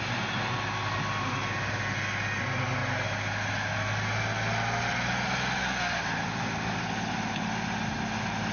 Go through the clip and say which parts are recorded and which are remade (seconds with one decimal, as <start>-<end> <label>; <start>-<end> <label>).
0.0-8.5 recorded